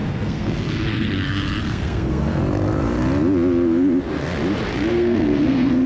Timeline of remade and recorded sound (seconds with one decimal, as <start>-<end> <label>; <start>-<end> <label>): 0.0-2.4 remade; 2.4-4.9 recorded; 4.9-5.9 remade